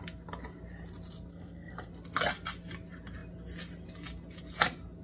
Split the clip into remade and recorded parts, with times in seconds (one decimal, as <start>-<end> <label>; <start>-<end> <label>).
0.0-1.3 recorded; 1.3-1.9 remade; 1.9-5.0 recorded